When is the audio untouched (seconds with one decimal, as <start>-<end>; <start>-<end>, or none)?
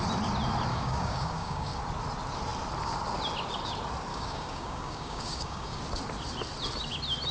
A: 0.0-0.7; 1.8-4.1; 5.8-7.3